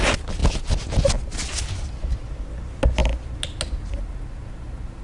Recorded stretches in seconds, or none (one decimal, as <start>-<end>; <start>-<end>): 0.0-5.0